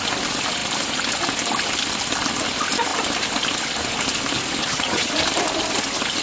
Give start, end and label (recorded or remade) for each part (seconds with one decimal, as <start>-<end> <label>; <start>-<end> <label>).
0.0-4.6 recorded; 4.6-5.1 remade; 5.1-6.2 recorded